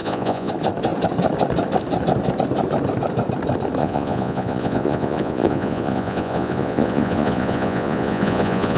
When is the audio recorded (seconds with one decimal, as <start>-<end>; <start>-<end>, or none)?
0.5-3.8